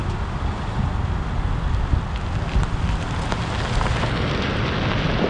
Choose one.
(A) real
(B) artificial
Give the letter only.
A